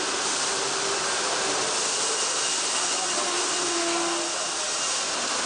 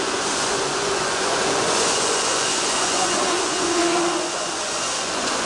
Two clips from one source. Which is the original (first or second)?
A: first